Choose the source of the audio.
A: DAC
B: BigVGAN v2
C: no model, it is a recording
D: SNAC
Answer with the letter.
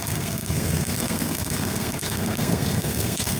D